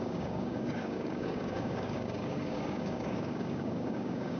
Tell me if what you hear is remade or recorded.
remade